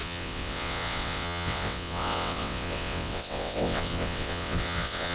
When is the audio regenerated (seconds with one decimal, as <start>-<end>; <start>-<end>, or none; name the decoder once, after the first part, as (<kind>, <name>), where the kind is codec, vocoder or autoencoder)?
0.0-5.1 (vocoder, WaveNeXt)